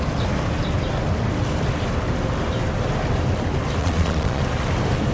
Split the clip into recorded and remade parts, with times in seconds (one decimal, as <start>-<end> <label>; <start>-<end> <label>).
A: 0.0-3.8 recorded; 3.8-4.4 remade; 4.4-5.1 recorded